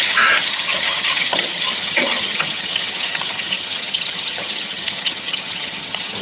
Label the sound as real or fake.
fake